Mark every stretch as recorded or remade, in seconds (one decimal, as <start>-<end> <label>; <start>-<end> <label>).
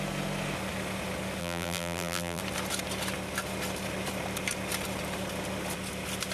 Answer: 0.0-1.4 recorded; 1.4-2.4 remade; 2.4-6.3 recorded